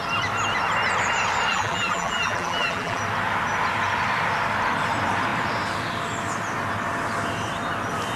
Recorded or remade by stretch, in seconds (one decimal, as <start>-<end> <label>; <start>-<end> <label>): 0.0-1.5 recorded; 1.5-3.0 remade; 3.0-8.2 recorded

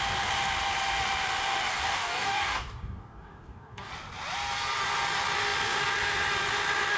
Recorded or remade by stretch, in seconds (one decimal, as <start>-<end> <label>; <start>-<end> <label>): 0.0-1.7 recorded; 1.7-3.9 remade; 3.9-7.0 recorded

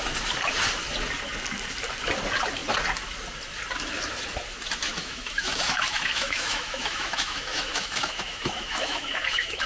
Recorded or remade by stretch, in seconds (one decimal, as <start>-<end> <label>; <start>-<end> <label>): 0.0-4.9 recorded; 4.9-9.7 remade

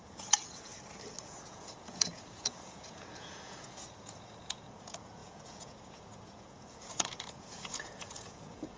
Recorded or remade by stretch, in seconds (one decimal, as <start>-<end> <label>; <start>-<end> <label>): 0.0-0.7 remade; 0.7-1.2 recorded; 1.2-8.8 remade